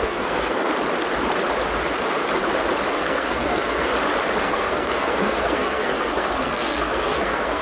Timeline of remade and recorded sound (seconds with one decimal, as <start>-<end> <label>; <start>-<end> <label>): 0.0-0.7 remade; 0.7-2.9 recorded; 2.9-3.9 remade; 3.9-4.4 recorded; 4.4-7.6 remade

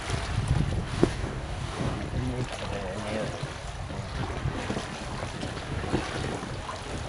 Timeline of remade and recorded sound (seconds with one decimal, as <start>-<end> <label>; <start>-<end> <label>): 0.0-0.8 recorded; 0.8-2.0 remade; 2.0-7.1 recorded

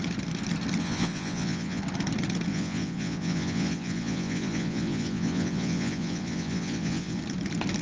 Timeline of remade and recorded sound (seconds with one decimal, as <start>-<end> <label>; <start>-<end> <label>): 0.0-0.8 recorded; 0.8-1.8 remade; 1.8-2.5 recorded; 2.5-7.2 remade; 7.2-7.8 recorded

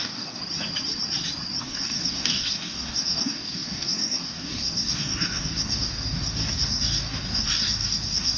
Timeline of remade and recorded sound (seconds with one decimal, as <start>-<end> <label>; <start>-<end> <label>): 0.0-0.4 remade; 0.4-1.6 recorded; 1.6-8.4 remade

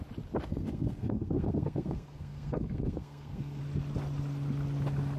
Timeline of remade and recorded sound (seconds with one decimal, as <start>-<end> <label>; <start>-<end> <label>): 0.0-0.5 recorded; 0.5-3.6 remade; 3.6-5.2 recorded